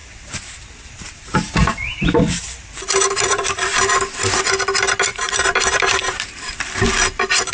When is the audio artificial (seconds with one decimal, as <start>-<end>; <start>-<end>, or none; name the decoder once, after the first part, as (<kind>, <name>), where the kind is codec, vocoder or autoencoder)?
0.0-4.4 (vocoder, BigVGAN v2); 5.1-6.9